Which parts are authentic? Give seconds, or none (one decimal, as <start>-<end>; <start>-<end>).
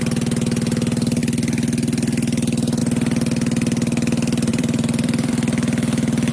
0.0-4.5; 5.3-6.3